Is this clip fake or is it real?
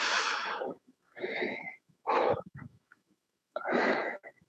fake